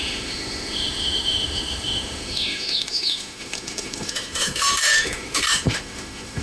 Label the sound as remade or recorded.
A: remade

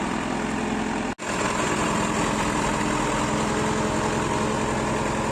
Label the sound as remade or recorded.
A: recorded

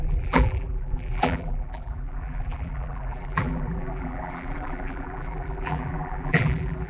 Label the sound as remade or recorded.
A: remade